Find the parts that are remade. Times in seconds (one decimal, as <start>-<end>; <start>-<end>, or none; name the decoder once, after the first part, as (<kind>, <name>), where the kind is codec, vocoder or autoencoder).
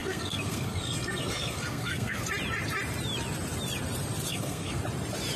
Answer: 0.0-2.2 (codec, SNAC); 4.3-4.8